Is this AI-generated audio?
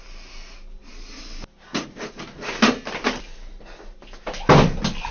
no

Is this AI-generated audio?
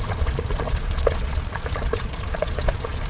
yes